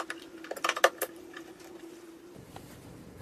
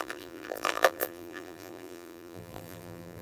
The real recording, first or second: first